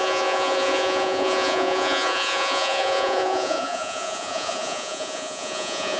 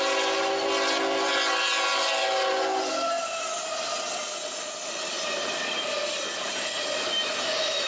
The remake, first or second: first